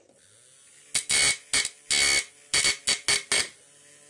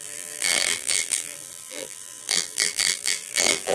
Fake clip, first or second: second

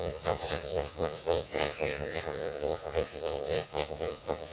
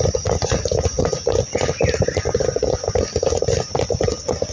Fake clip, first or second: first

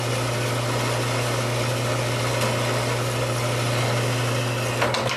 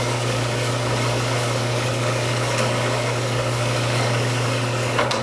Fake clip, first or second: second